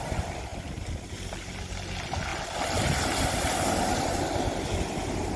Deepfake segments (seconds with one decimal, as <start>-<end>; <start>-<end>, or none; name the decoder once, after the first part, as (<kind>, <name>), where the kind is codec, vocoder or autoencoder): none